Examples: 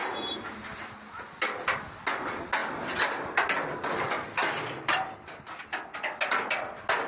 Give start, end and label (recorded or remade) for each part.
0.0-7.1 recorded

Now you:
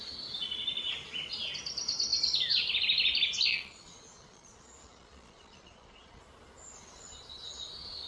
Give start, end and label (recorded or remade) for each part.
0.0-3.5 recorded; 3.5-6.2 remade; 6.2-8.1 recorded

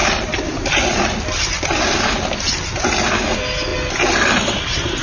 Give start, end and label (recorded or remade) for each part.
0.0-5.0 recorded

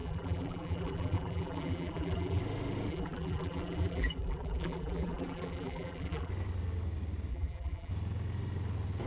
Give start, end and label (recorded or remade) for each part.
0.0-2.4 remade; 2.4-2.9 recorded; 2.9-6.3 remade; 6.3-7.3 recorded; 7.3-7.9 remade; 7.9-9.1 recorded

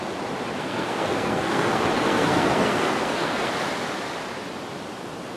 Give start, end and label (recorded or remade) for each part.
0.0-0.5 recorded; 0.5-3.5 remade; 3.5-5.4 recorded

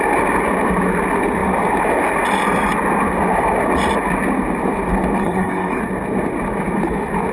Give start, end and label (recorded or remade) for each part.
0.0-5.2 recorded; 5.2-5.8 remade; 5.8-7.3 recorded